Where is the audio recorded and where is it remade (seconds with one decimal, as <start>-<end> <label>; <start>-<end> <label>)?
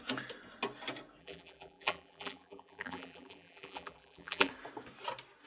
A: 0.0-1.2 recorded; 1.2-4.5 remade; 4.5-5.5 recorded